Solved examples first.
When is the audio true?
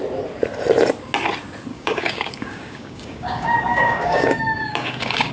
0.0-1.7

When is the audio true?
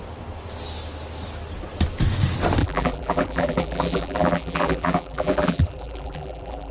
0.0-2.6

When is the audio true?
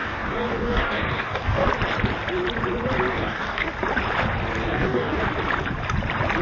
1.7-3.1; 3.7-4.6; 5.2-6.4